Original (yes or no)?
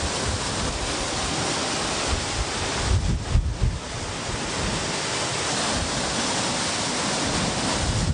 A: yes